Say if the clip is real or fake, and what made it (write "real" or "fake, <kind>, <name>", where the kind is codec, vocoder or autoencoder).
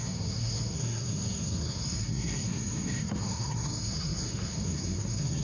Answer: fake, codec, SNAC